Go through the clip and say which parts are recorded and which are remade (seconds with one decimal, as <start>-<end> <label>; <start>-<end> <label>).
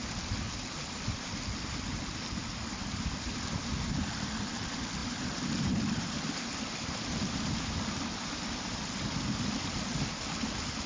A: 0.0-5.0 recorded; 5.0-9.7 remade; 9.7-10.9 recorded